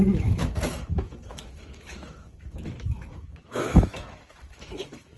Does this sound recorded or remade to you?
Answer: remade